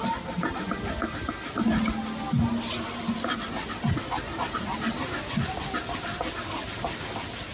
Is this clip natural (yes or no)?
yes